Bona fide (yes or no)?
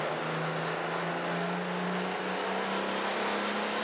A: yes